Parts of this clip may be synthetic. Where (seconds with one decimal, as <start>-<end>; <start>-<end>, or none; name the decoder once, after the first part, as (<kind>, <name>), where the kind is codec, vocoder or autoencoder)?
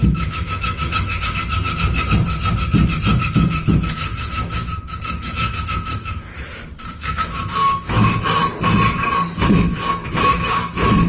0.0-1.4 (autoencoder, DAC-VAE); 3.3-6.3; 6.9-8.4; 9.4-11.1